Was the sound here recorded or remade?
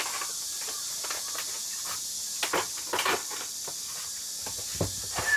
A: recorded